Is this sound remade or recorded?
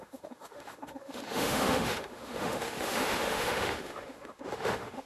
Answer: remade